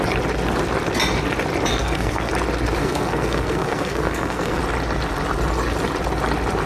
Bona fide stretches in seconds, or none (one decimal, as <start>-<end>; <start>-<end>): 0.0-1.7; 2.3-2.8; 4.6-6.7